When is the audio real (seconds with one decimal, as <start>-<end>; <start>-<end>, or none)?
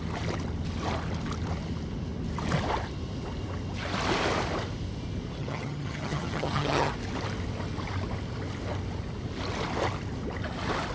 0.0-5.4; 6.9-10.9